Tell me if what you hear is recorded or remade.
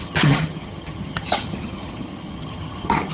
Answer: remade